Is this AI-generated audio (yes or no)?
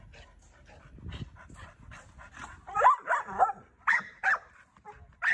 no